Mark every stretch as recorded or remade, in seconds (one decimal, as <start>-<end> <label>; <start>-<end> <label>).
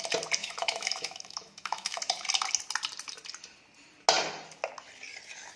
0.0-0.4 recorded; 0.4-2.0 remade; 2.0-5.6 recorded